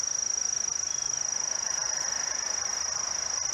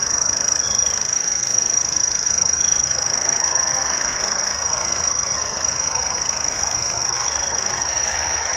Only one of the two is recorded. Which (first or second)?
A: first